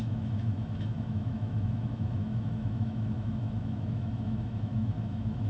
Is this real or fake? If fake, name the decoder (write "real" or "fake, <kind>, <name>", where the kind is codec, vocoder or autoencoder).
fake, autoencoder, DAC-VAE